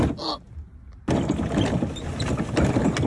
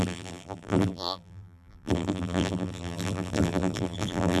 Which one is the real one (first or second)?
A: first